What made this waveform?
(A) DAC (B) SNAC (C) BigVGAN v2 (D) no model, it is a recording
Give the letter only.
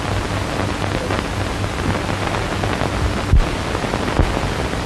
D